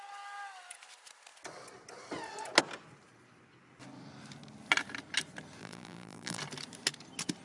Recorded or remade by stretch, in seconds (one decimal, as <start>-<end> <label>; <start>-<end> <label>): 0.0-5.6 recorded; 5.6-6.4 remade; 6.4-7.4 recorded